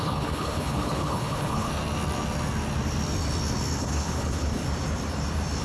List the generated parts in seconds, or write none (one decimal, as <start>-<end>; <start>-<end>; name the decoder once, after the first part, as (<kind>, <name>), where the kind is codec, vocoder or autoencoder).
0.0-1.7 (codec, HILCodec); 3.8-4.6